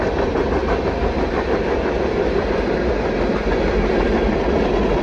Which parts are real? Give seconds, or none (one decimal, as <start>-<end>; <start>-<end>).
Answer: 0.0-5.0